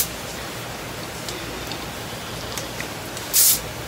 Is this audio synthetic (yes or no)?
no